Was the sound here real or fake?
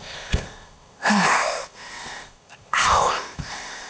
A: fake